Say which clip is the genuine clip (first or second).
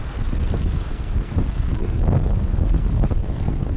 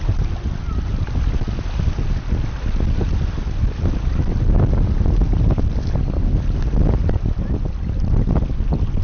second